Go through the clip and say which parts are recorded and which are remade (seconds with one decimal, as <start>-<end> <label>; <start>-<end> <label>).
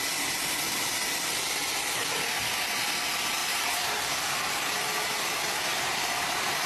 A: 0.0-3.4 recorded; 3.4-4.6 remade; 4.6-5.7 recorded; 5.7-6.7 remade